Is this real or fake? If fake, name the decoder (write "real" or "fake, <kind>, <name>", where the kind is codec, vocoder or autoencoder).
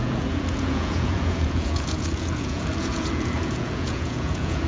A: fake, vocoder, Vocos